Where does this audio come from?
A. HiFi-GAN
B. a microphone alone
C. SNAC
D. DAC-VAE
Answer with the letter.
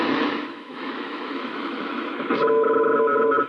D